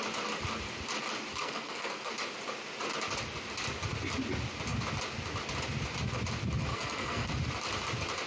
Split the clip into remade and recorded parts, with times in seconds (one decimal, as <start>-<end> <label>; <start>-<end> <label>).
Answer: 0.0-1.3 recorded; 1.3-2.1 remade; 2.1-6.7 recorded; 6.7-7.4 remade; 7.4-8.3 recorded